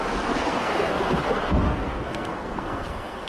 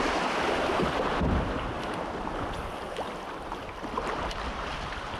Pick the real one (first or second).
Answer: second